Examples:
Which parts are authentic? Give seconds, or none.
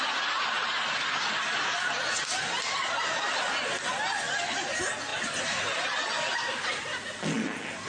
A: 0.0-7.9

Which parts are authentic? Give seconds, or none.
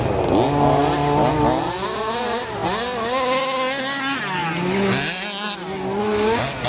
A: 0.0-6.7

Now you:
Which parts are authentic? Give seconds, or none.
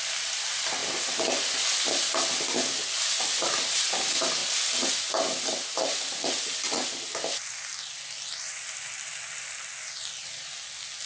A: 0.0-11.1